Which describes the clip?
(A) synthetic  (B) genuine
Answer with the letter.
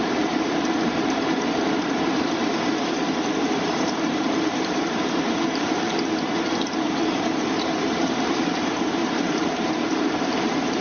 A